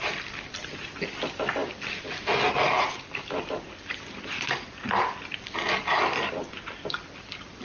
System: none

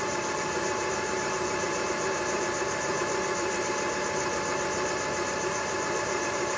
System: vocoder, BigVGAN v2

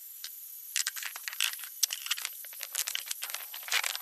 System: vocoder, BigVGAN v2